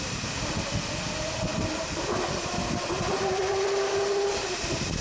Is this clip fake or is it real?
real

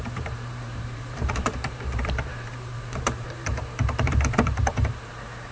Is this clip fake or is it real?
fake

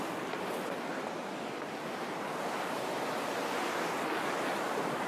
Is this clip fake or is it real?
real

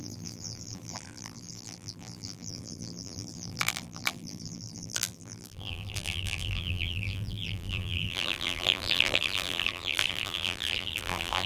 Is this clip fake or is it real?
fake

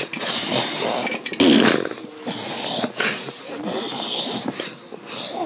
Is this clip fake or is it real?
real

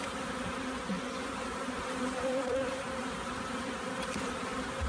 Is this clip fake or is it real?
fake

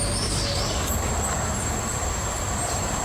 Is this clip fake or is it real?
fake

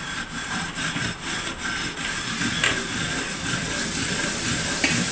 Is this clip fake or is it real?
real